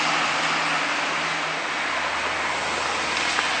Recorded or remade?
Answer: recorded